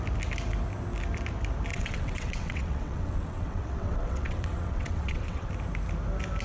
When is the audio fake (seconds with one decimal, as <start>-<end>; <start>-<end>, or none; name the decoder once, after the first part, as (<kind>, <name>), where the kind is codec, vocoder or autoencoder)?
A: 1.7-5.5 (vocoder, WaveNeXt)